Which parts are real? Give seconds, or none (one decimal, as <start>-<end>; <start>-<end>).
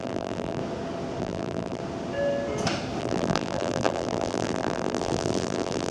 0.6-1.2; 1.8-3.0